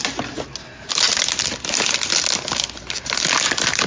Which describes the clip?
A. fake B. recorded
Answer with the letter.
B